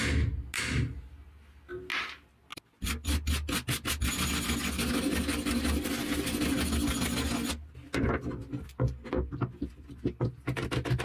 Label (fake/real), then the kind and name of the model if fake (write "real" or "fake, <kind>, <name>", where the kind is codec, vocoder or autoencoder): real